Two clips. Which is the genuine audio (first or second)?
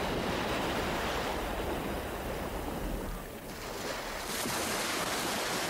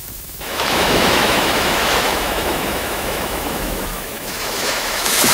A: first